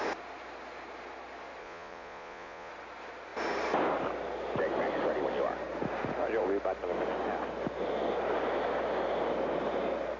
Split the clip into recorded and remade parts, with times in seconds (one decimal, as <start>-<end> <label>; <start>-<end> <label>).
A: 0.0-1.6 recorded; 1.6-2.7 remade; 2.7-10.2 recorded